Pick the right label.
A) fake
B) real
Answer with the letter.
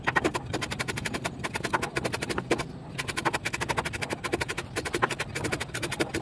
B